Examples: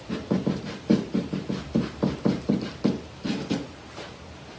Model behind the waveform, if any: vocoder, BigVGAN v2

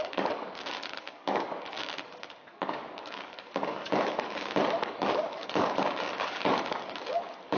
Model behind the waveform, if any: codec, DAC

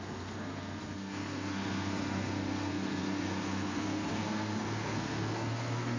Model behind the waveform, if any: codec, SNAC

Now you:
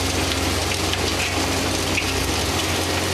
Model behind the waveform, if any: none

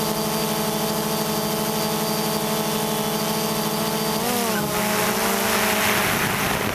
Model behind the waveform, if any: none